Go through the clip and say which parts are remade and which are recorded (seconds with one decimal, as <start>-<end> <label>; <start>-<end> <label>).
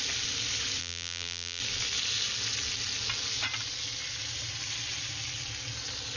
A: 0.0-0.8 recorded; 0.8-1.6 remade; 1.6-6.2 recorded